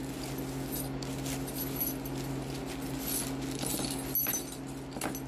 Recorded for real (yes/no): yes